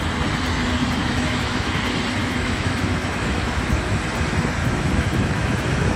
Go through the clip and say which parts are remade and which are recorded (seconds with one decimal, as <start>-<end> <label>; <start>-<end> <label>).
0.0-1.0 recorded; 1.0-1.8 remade; 1.8-2.2 recorded; 2.2-3.9 remade; 3.9-4.6 recorded; 4.6-6.0 remade